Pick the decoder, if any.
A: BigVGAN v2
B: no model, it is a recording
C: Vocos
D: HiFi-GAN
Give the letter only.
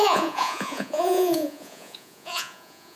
C